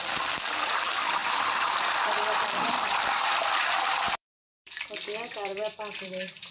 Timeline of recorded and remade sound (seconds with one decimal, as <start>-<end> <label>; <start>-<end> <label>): 0.0-6.5 remade